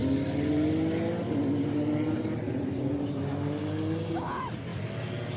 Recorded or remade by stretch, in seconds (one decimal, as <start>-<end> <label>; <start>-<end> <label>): 0.0-5.4 recorded